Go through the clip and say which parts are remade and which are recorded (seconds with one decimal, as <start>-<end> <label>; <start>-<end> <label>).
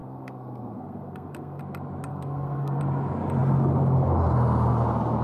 0.0-1.6 remade; 1.6-2.1 recorded; 2.1-2.8 remade; 2.8-5.2 recorded